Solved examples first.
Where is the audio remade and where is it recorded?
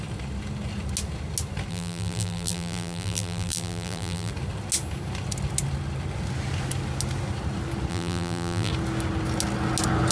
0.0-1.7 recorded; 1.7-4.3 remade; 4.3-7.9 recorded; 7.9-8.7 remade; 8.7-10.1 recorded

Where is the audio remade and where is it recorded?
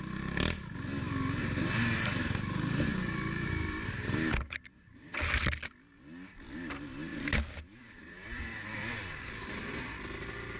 0.0-1.4 recorded; 1.4-5.0 remade; 5.0-7.1 recorded; 7.1-9.1 remade; 9.1-10.6 recorded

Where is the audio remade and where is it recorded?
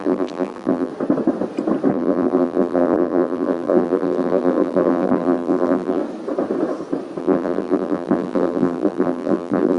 0.0-0.9 remade; 0.9-1.9 recorded; 1.9-6.0 remade; 6.0-7.2 recorded; 7.2-9.8 remade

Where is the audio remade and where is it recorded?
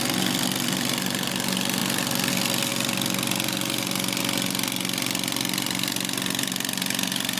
0.0-7.4 recorded